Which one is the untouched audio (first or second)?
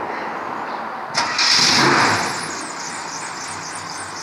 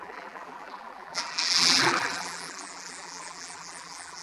first